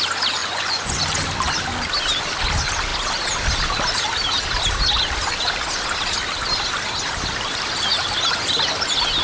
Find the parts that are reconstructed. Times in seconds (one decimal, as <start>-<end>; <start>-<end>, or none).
0.4-1.0